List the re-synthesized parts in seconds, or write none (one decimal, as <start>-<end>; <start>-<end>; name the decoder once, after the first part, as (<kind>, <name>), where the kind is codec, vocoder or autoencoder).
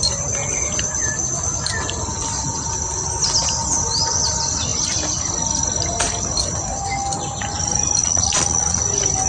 8.0-8.8 (vocoder, Vocos)